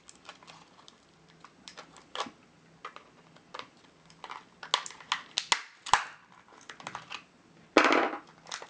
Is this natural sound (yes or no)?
yes